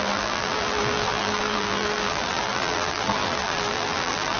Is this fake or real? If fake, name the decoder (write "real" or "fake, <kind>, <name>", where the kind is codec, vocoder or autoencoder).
fake, vocoder, BigVGAN v2